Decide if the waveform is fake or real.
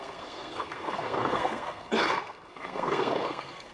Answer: fake